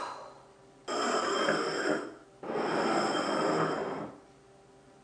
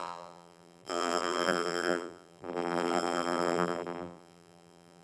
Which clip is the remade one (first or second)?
second